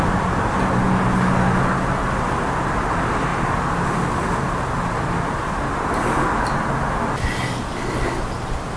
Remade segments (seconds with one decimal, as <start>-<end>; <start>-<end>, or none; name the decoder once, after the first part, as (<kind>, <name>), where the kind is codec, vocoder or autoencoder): none